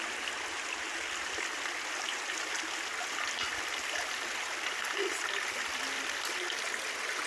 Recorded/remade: recorded